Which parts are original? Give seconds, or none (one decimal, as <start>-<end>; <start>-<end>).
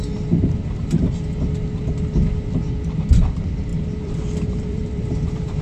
0.0-3.7